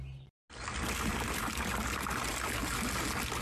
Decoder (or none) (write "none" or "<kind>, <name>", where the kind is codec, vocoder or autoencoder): none